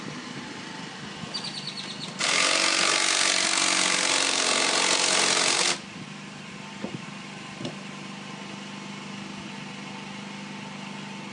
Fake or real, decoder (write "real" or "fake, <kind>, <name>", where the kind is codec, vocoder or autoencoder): real